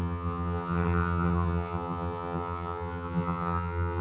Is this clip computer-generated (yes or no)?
yes